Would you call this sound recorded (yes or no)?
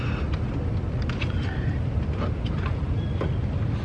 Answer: yes